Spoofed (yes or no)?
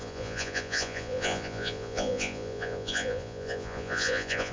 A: yes